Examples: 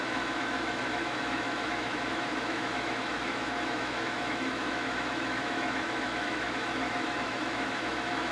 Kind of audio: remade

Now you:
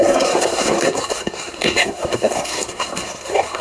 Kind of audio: remade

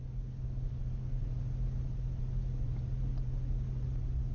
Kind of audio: recorded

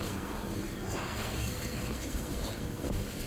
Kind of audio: remade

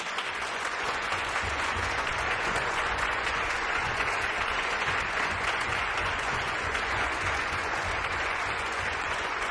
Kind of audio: remade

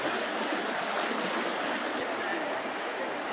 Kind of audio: recorded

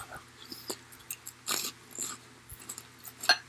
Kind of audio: recorded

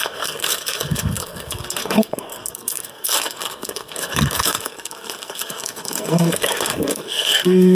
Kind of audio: remade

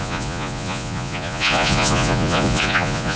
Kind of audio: remade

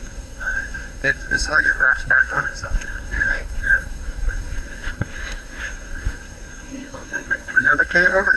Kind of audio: remade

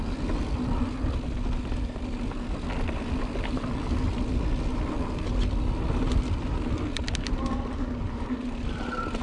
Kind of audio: recorded